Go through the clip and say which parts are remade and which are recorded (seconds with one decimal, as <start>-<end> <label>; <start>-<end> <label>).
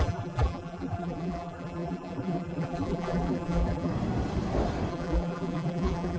0.0-3.9 remade; 3.9-4.9 recorded; 4.9-6.2 remade